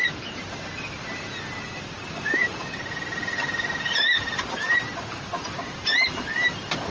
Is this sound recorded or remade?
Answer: remade